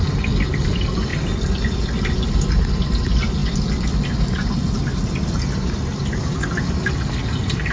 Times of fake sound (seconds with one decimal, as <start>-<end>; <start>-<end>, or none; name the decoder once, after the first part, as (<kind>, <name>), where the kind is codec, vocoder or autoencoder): none